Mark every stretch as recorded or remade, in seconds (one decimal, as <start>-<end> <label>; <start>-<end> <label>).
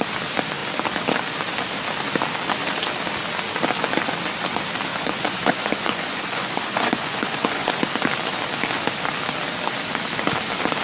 0.0-4.9 recorded; 4.9-7.7 remade; 7.7-10.8 recorded